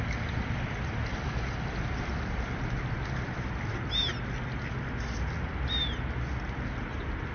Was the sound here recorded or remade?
recorded